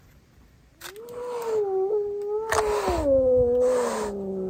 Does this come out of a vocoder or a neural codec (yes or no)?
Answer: no